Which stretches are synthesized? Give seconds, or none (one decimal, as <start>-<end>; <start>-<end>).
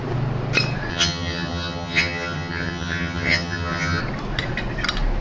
0.9-4.0